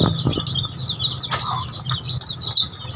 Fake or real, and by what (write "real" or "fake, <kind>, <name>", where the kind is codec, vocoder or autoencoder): real